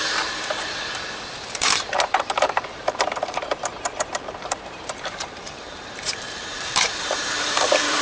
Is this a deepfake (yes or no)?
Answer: yes